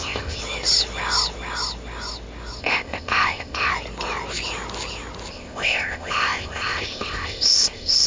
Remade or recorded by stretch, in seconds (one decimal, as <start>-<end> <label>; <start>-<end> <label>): 0.0-0.4 remade; 0.4-2.6 recorded; 2.6-3.7 remade; 3.7-5.3 recorded; 5.3-8.1 remade